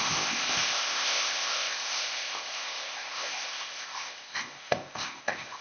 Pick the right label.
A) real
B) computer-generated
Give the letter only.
B